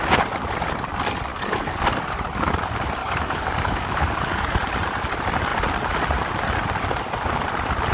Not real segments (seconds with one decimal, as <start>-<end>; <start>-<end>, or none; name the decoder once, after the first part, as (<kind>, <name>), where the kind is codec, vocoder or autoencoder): 1.3-2.0 (codec, DAC); 3.0-4.5